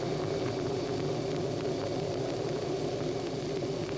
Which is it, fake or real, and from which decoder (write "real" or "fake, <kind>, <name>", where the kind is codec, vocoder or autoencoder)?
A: real